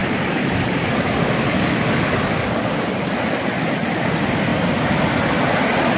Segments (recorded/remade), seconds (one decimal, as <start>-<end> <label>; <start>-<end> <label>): 0.0-3.1 remade; 3.1-6.0 recorded